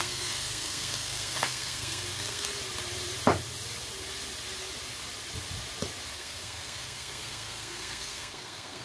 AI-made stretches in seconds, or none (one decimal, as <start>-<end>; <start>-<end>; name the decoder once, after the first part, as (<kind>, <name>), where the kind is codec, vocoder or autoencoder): 0.0-2.5 (codec, SNAC); 6.1-8.8